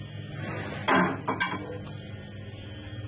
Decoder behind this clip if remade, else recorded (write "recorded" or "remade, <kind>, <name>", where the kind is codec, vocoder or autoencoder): recorded